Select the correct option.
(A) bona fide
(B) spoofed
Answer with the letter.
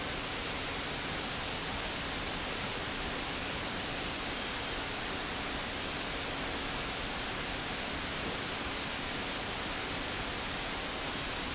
A